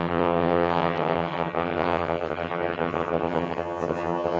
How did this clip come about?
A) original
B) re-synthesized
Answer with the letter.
B